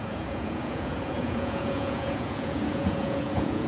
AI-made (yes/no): yes